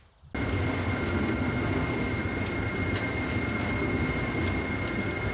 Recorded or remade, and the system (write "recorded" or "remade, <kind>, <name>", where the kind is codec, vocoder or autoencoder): recorded